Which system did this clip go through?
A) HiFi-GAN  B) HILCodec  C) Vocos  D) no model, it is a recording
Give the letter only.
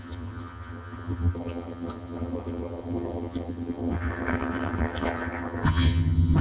A